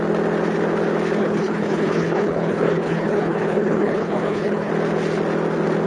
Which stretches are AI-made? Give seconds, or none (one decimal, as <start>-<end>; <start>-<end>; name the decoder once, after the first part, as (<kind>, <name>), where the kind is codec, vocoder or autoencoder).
1.2-4.7 (codec, HILCodec)